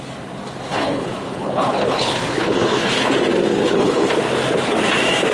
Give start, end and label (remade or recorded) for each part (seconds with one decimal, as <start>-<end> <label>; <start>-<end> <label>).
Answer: 0.0-0.7 recorded; 0.7-3.1 remade; 3.1-3.6 recorded; 3.6-4.1 remade; 4.1-5.3 recorded